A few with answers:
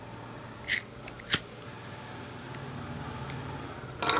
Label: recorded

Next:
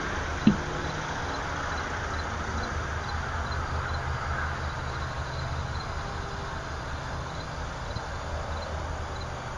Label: recorded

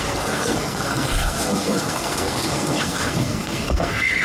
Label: remade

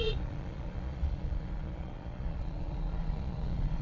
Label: remade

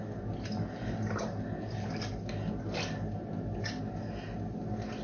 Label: recorded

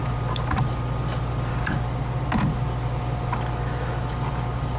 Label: recorded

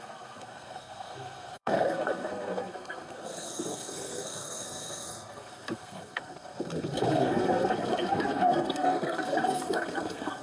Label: remade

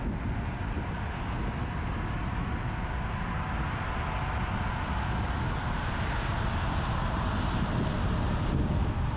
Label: recorded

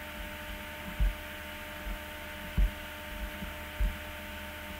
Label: recorded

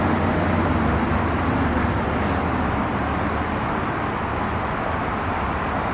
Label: recorded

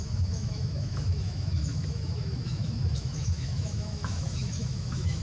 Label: remade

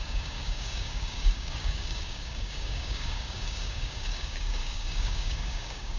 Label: remade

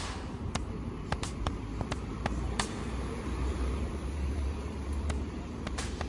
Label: remade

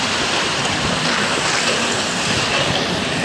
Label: recorded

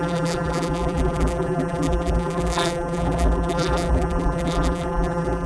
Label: remade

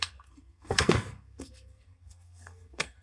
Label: remade